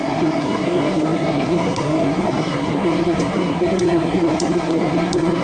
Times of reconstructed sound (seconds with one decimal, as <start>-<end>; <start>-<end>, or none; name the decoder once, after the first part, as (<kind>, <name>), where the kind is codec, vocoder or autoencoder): 0.0-5.4 (codec, SNAC)